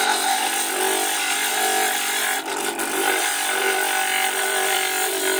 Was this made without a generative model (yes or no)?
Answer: no